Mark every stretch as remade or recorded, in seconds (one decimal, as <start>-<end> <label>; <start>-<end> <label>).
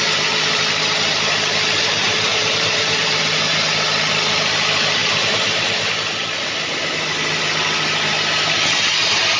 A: 0.0-2.4 recorded; 2.4-3.2 remade; 3.2-5.0 recorded; 5.0-5.9 remade; 5.9-9.4 recorded